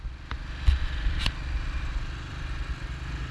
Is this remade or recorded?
recorded